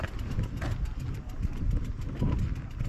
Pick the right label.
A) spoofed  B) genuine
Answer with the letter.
B